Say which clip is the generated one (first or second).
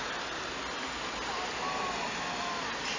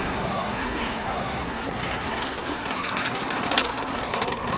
second